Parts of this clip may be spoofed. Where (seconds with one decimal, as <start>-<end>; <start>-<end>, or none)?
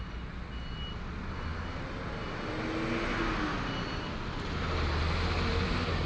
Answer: none